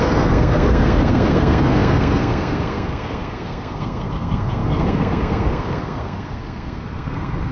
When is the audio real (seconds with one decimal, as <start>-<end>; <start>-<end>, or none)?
none